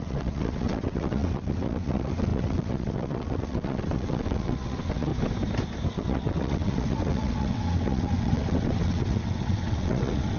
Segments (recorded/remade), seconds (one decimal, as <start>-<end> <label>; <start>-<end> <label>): 0.0-5.1 remade; 5.1-5.9 recorded; 5.9-10.4 remade